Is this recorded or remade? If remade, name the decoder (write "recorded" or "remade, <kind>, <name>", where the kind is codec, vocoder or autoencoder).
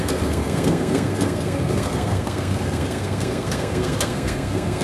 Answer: remade, codec, SNAC